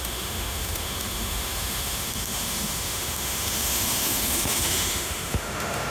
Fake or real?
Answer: fake